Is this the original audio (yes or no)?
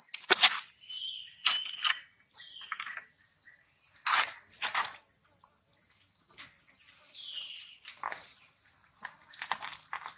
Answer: yes